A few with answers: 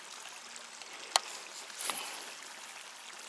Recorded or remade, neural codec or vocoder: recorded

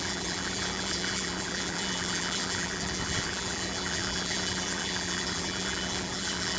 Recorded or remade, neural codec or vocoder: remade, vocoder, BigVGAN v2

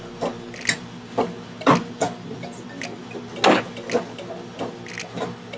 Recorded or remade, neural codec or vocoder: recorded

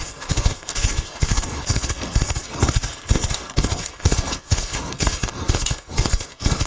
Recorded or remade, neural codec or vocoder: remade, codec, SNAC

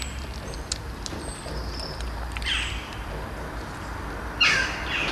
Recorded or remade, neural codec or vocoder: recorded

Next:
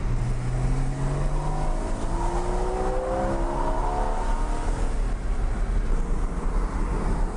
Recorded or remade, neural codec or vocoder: recorded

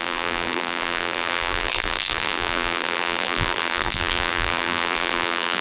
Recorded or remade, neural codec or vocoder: remade, vocoder, BigVGAN v2